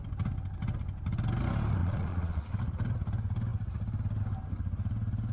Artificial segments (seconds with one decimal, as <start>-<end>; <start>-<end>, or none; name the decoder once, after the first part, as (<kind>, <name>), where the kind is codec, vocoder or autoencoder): 1.8-2.6 (vocoder, Vocos)